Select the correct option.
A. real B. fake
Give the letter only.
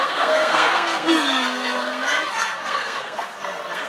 B